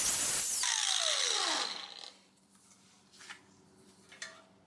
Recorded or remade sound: recorded